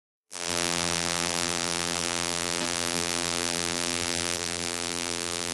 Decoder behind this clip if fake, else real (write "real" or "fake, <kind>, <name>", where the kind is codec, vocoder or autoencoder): fake, vocoder, BigVGAN v2